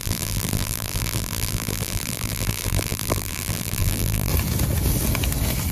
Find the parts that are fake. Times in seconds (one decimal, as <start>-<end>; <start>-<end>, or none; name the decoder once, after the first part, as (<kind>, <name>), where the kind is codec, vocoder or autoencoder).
0.0-4.3 (vocoder, BigVGAN v2)